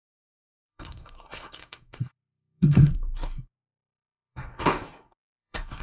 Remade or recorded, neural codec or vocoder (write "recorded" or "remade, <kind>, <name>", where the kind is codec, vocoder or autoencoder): remade, codec, SNAC